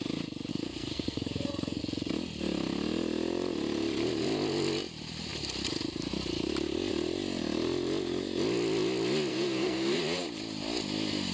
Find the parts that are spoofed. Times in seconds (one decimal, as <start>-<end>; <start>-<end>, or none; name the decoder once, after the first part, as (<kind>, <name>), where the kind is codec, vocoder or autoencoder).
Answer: 0.5-1.8 (codec, SNAC); 9.3-10.0